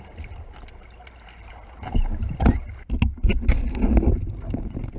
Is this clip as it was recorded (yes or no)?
yes